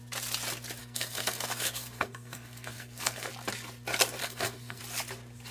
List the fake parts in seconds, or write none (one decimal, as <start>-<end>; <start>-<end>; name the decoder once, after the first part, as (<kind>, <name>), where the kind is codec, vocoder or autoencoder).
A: 0.8-3.3 (codec, SNAC); 4.2-4.8